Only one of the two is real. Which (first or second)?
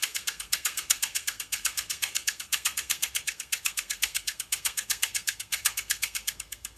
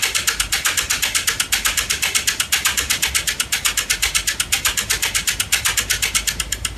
second